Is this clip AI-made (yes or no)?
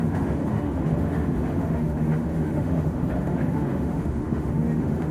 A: yes